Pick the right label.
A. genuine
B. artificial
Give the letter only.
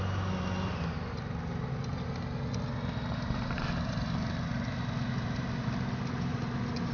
A